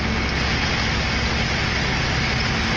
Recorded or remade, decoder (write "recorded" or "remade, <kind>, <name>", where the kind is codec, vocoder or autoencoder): recorded